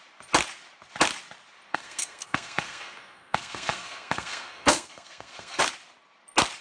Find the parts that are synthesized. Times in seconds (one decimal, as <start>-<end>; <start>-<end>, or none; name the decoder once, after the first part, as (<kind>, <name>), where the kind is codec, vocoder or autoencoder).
1.7-5.6 (codec, SNAC)